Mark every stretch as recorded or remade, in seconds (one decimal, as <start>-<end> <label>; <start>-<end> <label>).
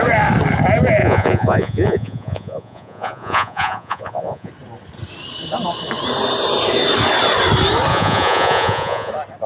0.0-1.0 recorded; 1.0-4.5 remade; 4.5-7.9 recorded; 7.9-9.1 remade; 9.1-9.5 recorded